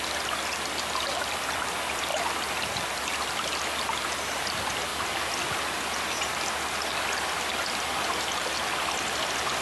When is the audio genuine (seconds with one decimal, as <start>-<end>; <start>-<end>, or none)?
0.0-9.6